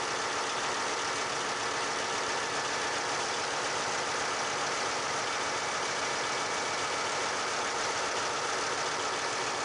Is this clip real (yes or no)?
yes